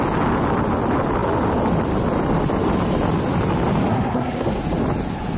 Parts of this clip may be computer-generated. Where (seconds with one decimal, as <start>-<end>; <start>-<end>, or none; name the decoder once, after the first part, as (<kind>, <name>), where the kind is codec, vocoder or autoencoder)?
3.9-4.6 (codec, SNAC)

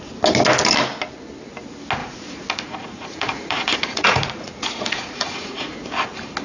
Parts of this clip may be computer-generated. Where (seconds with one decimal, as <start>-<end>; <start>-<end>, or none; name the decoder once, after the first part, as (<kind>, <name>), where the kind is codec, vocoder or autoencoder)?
2.0-5.8 (vocoder, Vocos)

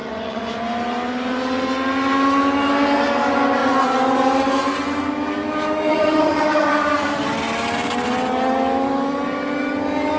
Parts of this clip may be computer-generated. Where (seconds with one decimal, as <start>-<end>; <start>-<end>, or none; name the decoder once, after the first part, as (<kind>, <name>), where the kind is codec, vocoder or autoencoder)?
0.0-0.6 (vocoder, Vocos); 5.9-6.7

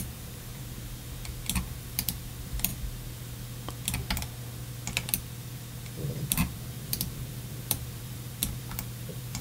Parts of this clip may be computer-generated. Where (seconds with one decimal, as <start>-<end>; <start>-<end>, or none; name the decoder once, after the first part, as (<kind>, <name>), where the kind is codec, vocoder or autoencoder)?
0.0-0.5 (vocoder, BigVGAN v2); 1.6-2.7; 5.9-9.4

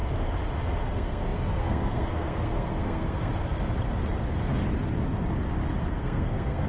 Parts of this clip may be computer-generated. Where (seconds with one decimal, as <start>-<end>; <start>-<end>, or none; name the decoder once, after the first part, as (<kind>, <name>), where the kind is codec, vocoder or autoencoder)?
0.9-3.3 (codec, SNAC); 5.8-6.7

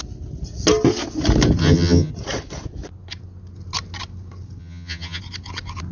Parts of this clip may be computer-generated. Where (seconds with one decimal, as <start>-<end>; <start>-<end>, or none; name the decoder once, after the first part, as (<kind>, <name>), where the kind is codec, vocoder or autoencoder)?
1.6-2.1 (vocoder, HiFi-GAN); 4.6-5.2

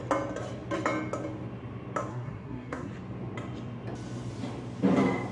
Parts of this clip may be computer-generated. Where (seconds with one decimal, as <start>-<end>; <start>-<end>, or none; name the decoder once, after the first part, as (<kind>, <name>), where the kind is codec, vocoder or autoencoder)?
2.1-2.9 (codec, SNAC)

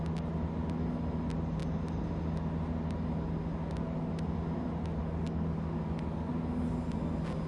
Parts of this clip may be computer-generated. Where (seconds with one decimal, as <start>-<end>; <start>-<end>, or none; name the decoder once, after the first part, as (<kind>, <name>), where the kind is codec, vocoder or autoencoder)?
5.0-6.3 (codec, DAC)